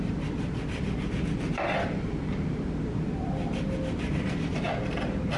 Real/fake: real